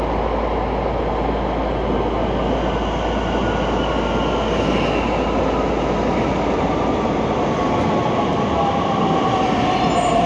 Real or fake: real